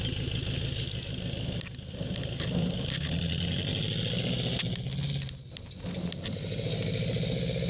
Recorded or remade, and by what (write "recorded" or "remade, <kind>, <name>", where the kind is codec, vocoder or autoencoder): recorded